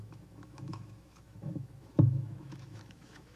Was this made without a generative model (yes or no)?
no